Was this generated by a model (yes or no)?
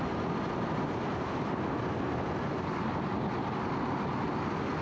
no